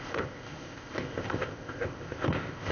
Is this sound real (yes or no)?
no